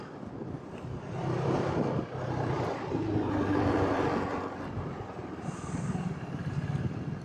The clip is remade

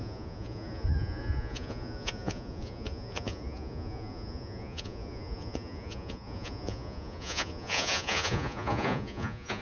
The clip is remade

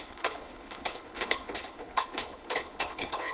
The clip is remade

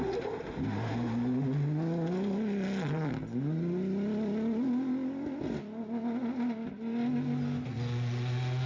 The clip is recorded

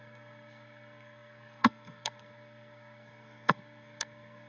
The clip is remade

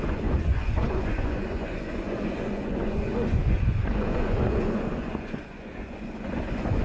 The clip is remade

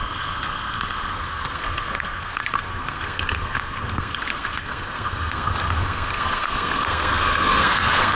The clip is remade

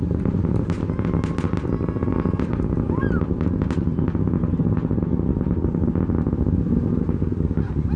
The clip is recorded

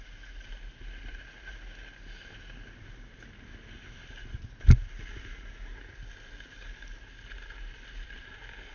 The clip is recorded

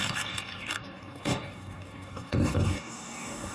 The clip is remade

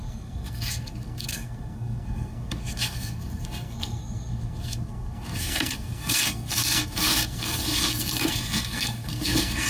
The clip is remade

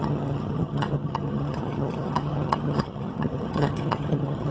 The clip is remade